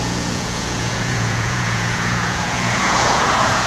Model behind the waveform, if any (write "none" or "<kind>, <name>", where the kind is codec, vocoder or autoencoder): vocoder, Vocos